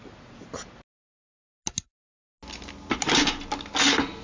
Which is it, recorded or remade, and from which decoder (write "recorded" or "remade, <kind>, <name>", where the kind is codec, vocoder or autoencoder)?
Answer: recorded